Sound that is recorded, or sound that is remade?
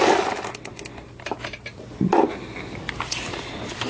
recorded